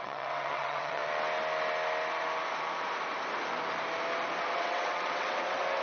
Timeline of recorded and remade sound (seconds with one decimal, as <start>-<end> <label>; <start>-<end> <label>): 0.0-1.0 remade; 1.0-4.5 recorded; 4.5-5.8 remade